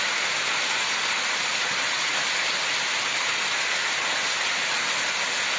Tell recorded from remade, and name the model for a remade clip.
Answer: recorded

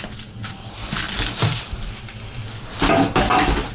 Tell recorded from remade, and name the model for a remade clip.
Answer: recorded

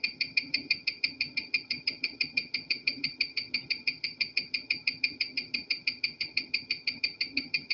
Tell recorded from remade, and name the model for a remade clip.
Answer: remade, vocoder, HiFi-GAN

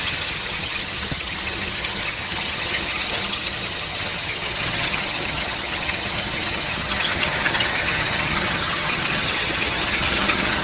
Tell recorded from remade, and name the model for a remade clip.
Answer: remade, vocoder, HiFi-GAN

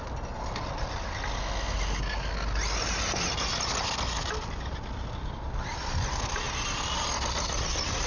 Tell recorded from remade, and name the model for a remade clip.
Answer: recorded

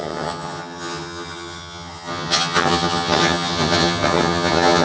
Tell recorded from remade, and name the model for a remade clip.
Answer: remade, vocoder, HiFi-GAN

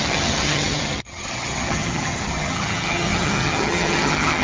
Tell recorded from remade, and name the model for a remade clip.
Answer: remade, vocoder, HiFi-GAN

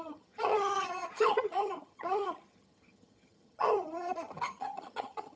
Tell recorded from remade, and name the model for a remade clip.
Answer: remade, vocoder, HiFi-GAN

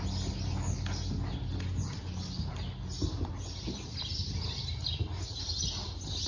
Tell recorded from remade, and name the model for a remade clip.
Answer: recorded